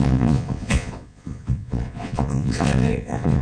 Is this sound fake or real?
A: fake